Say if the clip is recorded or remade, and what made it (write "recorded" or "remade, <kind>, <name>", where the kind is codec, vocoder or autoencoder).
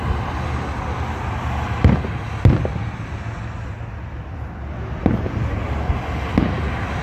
recorded